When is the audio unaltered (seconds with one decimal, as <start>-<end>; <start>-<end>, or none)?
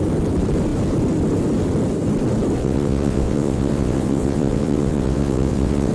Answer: 0.0-2.6